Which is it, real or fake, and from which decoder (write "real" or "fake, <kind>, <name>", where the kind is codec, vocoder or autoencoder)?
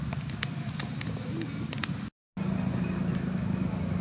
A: real